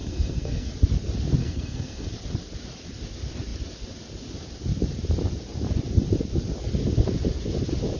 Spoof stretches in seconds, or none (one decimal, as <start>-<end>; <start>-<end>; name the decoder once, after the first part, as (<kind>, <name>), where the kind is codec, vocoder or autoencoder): 0.0-0.7 (codec, SNAC); 1.4-2.1